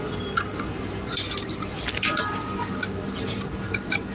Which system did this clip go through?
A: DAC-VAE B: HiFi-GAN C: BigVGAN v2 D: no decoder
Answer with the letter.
D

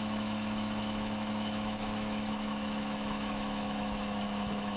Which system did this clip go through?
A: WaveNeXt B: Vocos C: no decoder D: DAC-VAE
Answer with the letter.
D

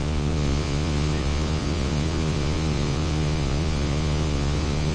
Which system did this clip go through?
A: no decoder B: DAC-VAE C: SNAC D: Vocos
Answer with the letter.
D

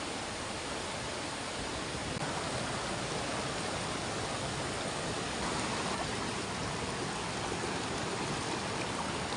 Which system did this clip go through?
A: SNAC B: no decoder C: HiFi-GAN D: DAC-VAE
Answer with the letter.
B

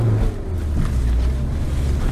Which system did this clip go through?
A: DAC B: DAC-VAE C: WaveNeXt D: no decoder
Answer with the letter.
D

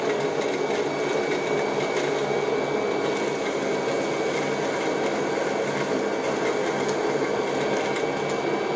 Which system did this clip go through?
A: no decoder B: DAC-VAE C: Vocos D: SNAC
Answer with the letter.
A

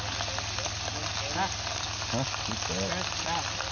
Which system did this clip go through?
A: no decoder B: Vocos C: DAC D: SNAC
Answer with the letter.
A